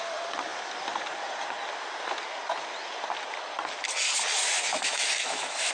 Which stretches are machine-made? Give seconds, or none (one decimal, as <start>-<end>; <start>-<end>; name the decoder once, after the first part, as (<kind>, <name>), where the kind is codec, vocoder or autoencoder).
4.4-5.7 (autoencoder, DAC-VAE)